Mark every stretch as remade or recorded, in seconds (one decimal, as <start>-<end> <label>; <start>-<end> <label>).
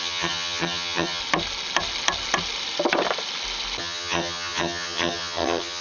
0.0-1.2 remade; 1.2-3.8 recorded; 3.8-5.8 remade